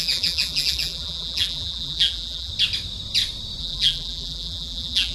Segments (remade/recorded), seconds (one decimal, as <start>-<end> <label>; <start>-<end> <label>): 0.0-2.5 remade; 2.5-3.6 recorded; 3.6-5.1 remade